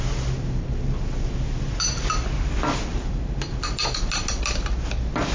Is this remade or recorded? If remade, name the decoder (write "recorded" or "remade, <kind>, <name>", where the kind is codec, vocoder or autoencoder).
recorded